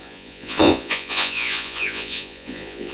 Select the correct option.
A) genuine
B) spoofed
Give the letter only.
B